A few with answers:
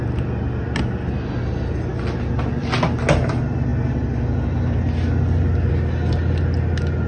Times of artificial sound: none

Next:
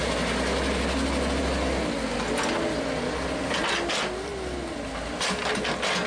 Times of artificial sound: none